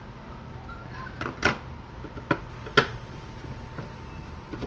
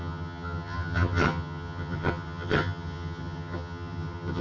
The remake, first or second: second